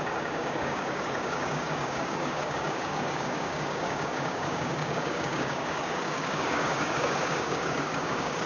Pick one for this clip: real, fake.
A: fake